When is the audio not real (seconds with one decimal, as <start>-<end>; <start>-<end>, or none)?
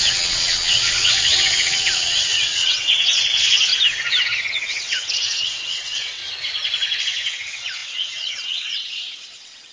0.0-3.7; 4.5-6.2; 7.0-9.7